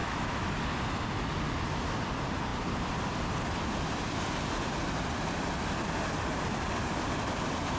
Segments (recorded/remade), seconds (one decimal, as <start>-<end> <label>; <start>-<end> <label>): 0.0-0.5 remade; 0.5-7.8 recorded